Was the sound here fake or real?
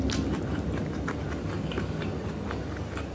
real